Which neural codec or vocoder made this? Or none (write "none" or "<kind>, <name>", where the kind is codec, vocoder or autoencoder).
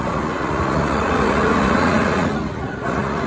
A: vocoder, Vocos